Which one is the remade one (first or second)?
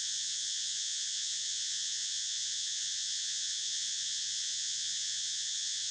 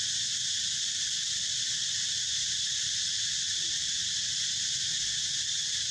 first